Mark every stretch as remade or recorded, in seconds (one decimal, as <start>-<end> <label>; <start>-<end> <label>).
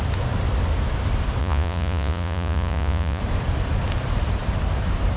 0.0-1.4 recorded; 1.4-3.2 remade; 3.2-5.2 recorded